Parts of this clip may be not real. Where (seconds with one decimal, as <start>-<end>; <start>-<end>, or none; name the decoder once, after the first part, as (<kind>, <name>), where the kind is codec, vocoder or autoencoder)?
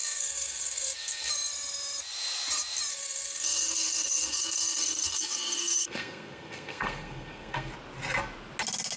0.0-1.3 (codec, SNAC); 2.9-7.7